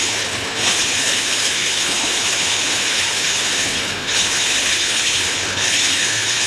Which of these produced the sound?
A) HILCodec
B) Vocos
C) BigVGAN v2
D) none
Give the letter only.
A